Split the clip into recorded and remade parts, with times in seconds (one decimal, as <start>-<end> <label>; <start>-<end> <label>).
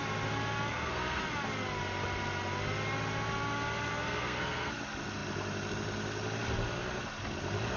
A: 0.0-0.7 recorded; 0.7-1.2 remade; 1.2-3.9 recorded; 3.9-4.7 remade; 4.7-7.8 recorded